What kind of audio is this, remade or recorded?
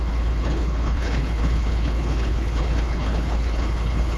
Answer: remade